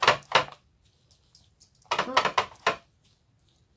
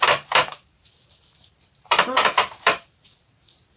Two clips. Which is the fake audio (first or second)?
second